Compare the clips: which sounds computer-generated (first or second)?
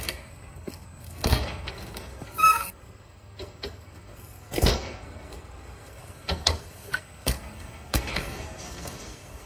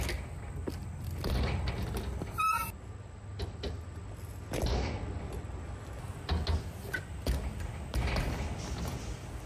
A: first